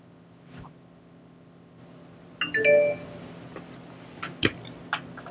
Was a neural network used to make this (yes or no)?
no